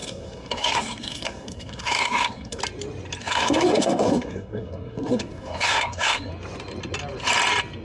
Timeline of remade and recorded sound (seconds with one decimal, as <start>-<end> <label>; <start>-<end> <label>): 0.0-2.6 remade; 2.6-3.2 recorded; 3.2-6.3 remade; 6.3-7.8 recorded